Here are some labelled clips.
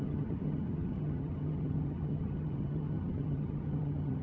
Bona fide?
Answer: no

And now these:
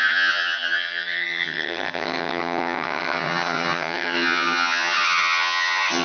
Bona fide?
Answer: no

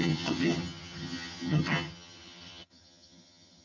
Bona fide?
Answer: no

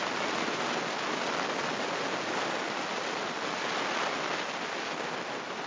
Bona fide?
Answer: yes